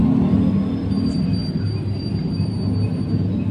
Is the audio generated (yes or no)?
no